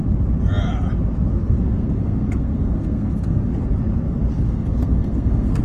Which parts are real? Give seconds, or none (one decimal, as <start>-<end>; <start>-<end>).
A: 0.0-1.4; 3.5-4.3